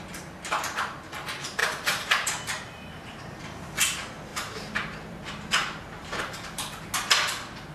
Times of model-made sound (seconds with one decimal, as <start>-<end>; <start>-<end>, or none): 1.6-3.4; 4.3-6.9